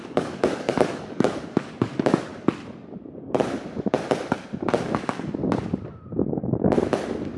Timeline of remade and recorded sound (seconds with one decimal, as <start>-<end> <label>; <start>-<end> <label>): 0.0-2.3 remade; 2.3-4.8 recorded; 4.8-5.4 remade; 5.4-6.3 recorded; 6.3-6.8 remade; 6.8-7.4 recorded